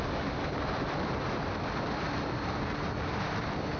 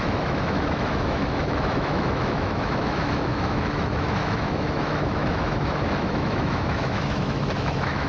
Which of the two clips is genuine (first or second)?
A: first